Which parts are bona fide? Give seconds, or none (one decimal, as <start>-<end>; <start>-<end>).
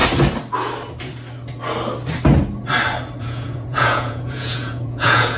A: 0.0-3.2